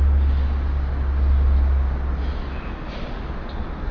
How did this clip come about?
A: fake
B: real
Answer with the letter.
B